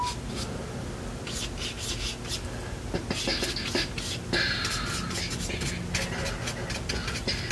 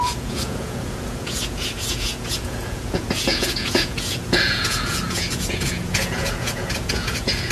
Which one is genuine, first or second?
first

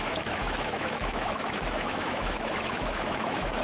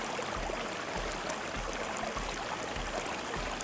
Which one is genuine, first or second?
second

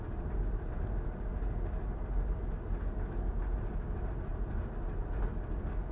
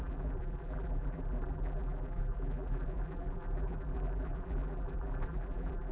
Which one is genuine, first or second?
first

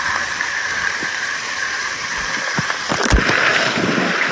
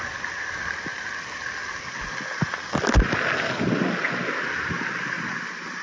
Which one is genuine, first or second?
second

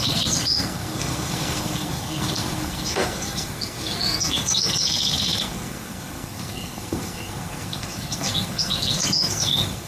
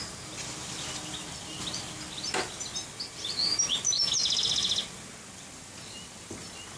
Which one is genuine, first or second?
second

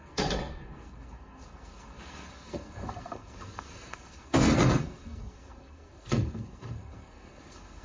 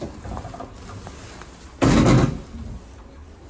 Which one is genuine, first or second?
second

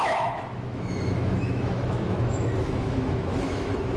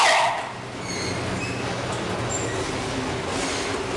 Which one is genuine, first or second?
second